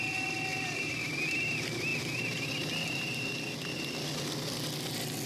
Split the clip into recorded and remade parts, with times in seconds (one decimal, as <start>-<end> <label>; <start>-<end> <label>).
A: 0.0-0.5 recorded; 0.5-1.1 remade; 1.1-5.3 recorded